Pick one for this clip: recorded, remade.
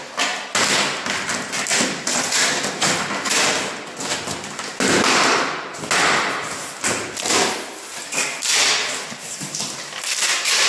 recorded